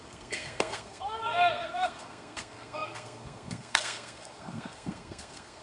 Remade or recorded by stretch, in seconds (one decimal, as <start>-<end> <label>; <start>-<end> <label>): 0.0-5.6 remade